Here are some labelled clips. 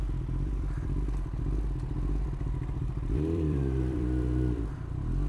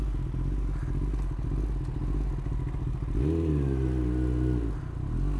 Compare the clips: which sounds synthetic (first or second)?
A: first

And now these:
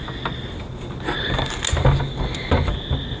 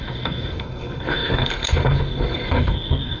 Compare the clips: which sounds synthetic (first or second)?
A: second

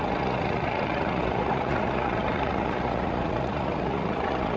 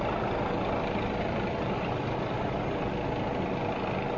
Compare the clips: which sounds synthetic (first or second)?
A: first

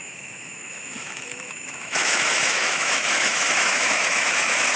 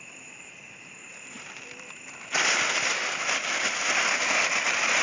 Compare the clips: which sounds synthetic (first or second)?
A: first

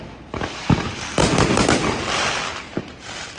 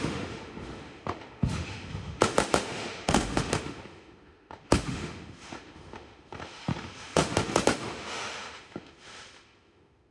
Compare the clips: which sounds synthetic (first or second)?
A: second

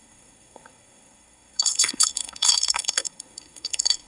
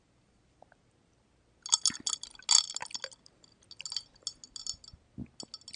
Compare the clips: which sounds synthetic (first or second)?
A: first